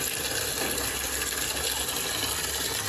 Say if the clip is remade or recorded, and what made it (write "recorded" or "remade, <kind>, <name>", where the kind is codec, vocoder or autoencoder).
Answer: recorded